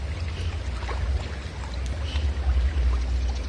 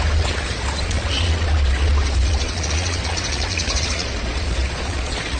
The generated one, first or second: second